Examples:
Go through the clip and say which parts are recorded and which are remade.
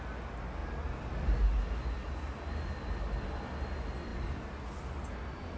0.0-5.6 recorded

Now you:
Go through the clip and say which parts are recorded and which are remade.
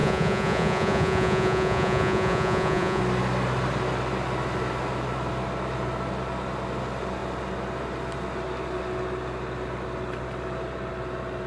0.0-3.0 remade; 3.0-11.5 recorded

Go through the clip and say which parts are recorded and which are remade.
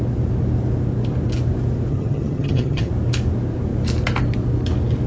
0.0-1.9 recorded; 1.9-2.9 remade; 2.9-5.1 recorded